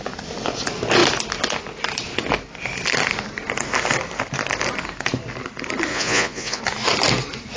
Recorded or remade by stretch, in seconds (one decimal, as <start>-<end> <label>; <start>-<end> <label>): 0.0-5.9 recorded; 5.9-6.6 remade; 6.6-7.6 recorded